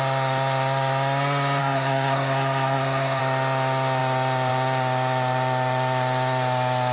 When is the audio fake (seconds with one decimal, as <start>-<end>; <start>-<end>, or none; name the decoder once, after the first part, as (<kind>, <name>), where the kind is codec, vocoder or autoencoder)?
1.6-3.2 (codec, SNAC)